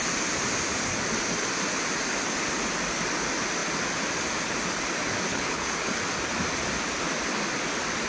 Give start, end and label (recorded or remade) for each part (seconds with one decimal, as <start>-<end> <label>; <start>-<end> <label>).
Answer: 0.0-5.3 recorded; 5.3-5.9 remade; 5.9-8.1 recorded